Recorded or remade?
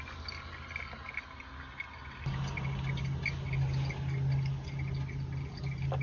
recorded